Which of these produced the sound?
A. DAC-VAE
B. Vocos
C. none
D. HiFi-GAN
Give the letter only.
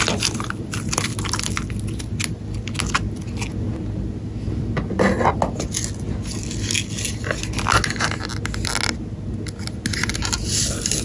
C